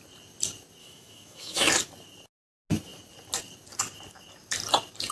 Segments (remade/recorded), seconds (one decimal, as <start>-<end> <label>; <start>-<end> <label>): 0.0-0.8 recorded; 0.8-1.7 remade; 1.7-5.1 recorded